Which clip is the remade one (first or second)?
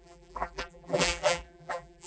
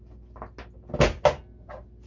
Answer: first